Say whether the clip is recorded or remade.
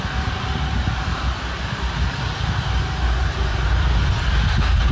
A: recorded